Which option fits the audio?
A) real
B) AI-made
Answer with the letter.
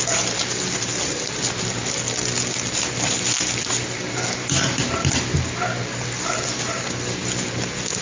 A